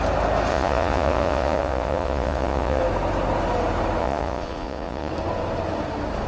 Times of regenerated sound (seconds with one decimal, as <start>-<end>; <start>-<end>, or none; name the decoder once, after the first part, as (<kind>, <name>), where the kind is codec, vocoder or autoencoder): 0.5-2.8 (vocoder, Vocos); 4.0-5.1